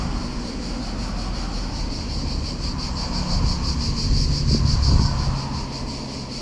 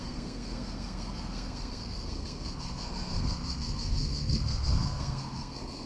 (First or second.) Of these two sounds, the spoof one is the second